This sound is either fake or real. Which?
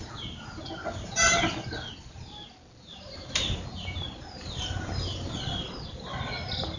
real